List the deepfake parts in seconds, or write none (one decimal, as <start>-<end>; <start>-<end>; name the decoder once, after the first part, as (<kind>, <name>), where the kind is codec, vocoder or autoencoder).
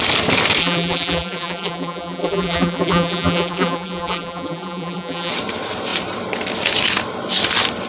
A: 0.6-5.3 (vocoder, BigVGAN v2)